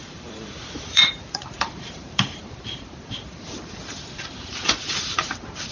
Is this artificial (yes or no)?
yes